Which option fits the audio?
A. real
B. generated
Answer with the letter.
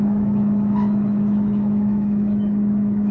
B